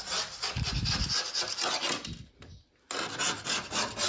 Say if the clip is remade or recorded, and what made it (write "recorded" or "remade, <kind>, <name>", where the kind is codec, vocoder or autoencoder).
recorded